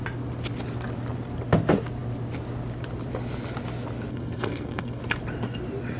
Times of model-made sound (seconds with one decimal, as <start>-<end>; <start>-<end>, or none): 4.1-5.0